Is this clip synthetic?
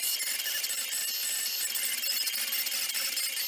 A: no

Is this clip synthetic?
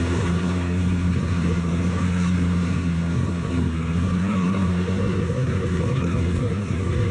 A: yes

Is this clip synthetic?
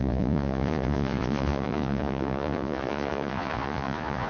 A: yes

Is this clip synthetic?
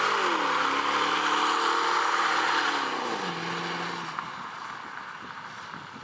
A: no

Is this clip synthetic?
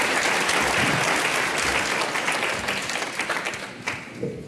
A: no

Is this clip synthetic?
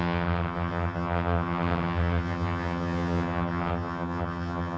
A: yes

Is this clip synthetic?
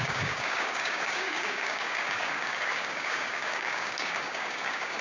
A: yes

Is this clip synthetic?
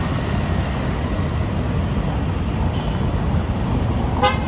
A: no